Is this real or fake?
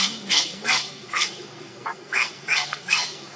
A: fake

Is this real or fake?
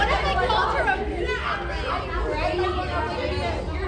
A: real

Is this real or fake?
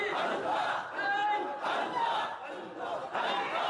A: real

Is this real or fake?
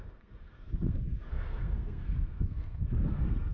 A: fake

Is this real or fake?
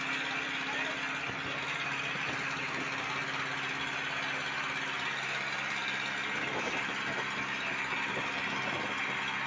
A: real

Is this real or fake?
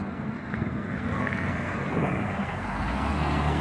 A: fake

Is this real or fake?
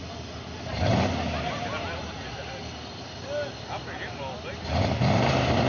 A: real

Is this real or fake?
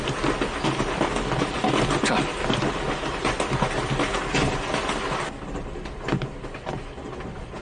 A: real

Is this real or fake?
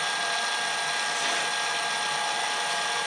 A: real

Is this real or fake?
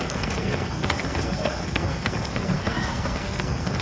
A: fake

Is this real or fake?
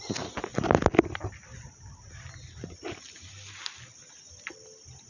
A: real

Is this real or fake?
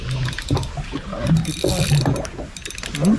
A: real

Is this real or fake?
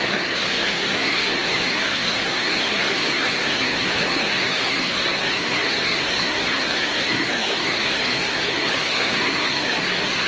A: fake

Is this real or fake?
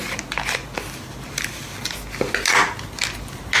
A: real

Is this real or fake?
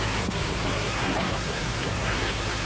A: fake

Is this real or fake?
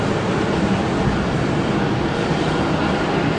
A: real